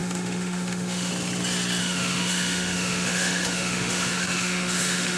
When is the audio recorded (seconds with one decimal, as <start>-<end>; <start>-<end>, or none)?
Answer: 1.1-1.8